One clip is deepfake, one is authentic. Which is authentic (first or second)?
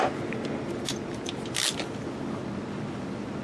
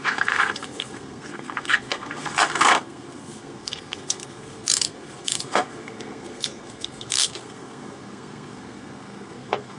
first